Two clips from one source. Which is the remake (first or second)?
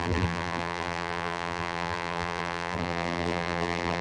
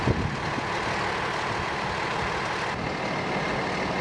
first